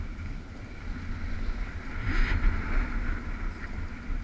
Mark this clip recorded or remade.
recorded